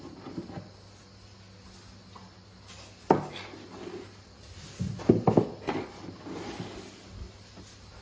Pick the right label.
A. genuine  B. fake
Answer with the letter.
A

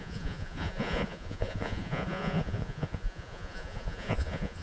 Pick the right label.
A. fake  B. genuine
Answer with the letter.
A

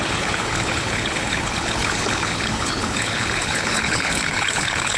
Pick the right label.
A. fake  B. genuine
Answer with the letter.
A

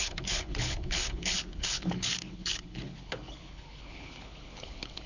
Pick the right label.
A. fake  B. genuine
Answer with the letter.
A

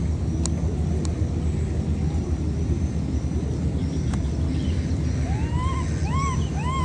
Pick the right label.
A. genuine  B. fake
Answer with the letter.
A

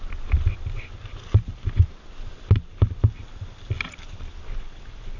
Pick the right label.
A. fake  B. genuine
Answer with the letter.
B